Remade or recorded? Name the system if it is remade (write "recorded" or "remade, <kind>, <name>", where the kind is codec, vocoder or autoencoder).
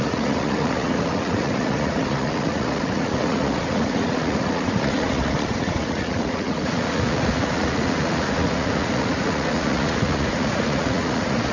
remade, vocoder, Vocos